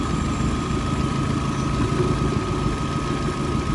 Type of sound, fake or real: real